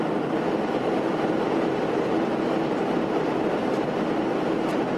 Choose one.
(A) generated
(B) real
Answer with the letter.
B